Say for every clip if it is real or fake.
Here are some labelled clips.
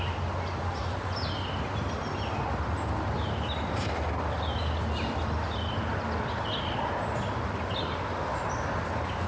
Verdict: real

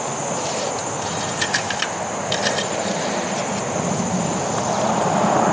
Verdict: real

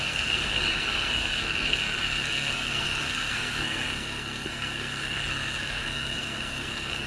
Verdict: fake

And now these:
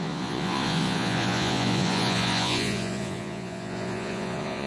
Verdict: fake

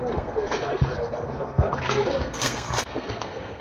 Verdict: fake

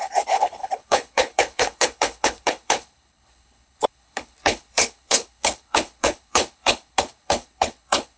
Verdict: fake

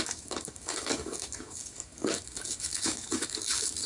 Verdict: fake